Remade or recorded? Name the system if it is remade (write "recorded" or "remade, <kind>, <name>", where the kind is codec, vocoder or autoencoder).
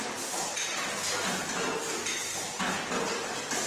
recorded